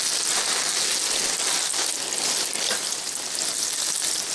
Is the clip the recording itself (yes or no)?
yes